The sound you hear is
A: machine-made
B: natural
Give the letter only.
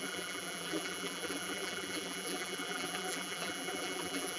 A